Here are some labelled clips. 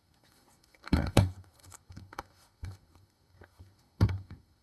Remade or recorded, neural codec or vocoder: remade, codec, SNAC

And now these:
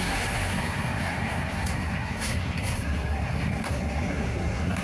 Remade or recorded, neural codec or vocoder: remade, codec, SNAC